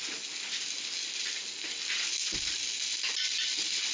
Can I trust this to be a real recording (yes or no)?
yes